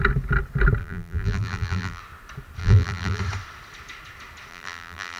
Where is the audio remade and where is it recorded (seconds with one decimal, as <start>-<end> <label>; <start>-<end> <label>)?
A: 0.0-0.8 recorded; 0.8-2.0 remade; 2.0-2.6 recorded; 2.6-3.2 remade; 3.2-4.5 recorded; 4.5-5.2 remade